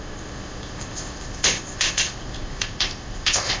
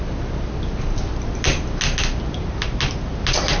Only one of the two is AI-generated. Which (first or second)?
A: first